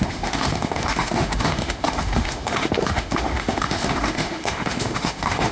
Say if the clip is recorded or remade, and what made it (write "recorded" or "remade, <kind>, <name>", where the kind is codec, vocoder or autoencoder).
remade, autoencoder, DAC-VAE